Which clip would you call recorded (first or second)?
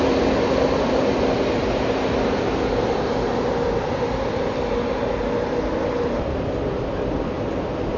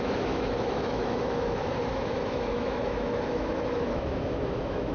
first